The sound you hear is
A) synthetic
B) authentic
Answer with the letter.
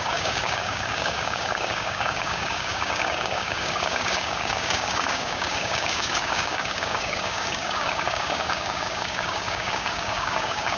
A